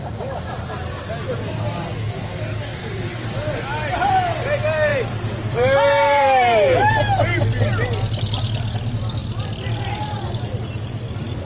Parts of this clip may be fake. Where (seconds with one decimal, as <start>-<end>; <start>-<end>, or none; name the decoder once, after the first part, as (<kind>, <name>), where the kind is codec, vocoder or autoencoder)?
4.9-6.9 (vocoder, BigVGAN v2)

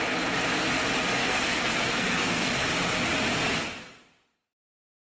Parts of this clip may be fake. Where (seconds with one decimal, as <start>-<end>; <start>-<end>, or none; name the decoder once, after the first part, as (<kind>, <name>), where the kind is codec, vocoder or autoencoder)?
1.2-2.5 (codec, SNAC)

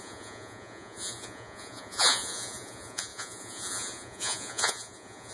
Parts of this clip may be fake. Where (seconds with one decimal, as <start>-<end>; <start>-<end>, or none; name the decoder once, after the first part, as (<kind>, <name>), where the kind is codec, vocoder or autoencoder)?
0.0-5.3 (vocoder, Vocos)

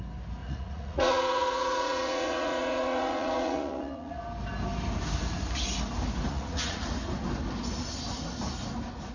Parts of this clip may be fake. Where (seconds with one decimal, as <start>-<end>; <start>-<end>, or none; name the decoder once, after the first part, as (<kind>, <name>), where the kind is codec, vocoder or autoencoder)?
0.4-4.2 (vocoder, Vocos); 6.3-6.8